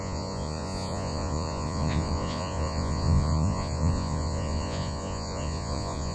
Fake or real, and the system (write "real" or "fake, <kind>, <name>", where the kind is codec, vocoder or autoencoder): fake, vocoder, Vocos